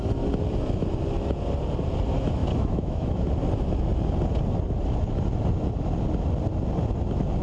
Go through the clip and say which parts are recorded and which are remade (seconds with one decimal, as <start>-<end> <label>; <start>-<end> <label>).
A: 0.0-2.4 recorded; 2.4-3.3 remade; 3.3-7.4 recorded